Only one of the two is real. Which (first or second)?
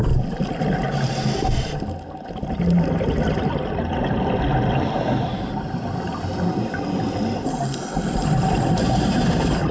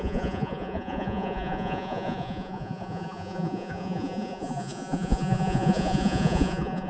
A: first